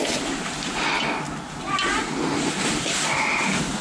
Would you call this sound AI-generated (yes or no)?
no